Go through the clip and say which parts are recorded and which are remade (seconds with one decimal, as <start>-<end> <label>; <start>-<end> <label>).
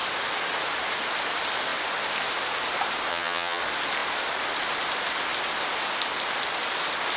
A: 0.0-3.1 recorded; 3.1-3.6 remade; 3.6-7.2 recorded